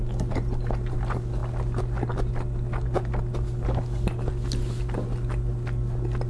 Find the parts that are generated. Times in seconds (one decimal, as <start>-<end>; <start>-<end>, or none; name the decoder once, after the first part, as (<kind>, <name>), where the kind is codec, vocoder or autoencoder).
none